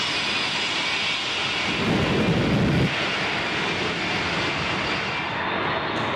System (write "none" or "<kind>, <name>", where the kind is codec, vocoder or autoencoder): none